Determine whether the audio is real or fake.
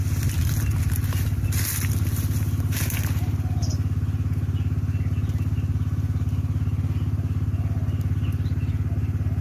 real